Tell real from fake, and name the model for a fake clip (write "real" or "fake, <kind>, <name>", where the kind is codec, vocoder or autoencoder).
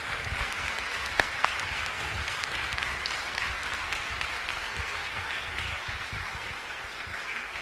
fake, codec, SNAC